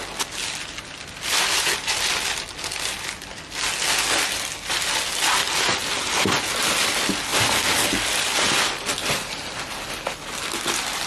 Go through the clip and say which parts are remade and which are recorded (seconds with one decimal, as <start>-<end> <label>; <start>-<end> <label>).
0.0-11.1 recorded